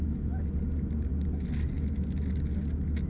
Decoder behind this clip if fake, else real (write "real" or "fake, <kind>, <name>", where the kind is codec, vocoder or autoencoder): real